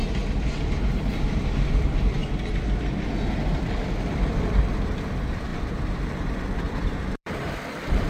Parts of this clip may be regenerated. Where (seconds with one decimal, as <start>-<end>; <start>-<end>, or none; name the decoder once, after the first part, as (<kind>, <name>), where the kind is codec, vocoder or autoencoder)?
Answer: 0.9-2.2 (vocoder, BigVGAN v2); 3.4-8.1